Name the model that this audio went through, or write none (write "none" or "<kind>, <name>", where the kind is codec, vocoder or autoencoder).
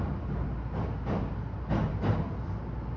none